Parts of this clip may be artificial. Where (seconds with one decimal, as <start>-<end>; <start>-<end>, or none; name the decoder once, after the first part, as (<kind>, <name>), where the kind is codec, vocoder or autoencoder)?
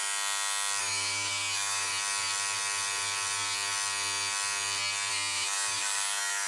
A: 0.8-1.9 (autoencoder, DAC-VAE); 5.1-6.5